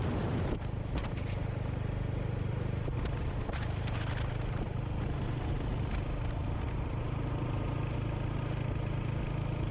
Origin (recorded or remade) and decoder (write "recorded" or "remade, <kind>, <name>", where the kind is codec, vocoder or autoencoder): recorded